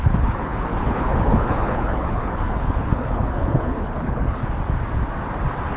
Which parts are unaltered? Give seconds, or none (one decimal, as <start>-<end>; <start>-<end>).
4.4-5.8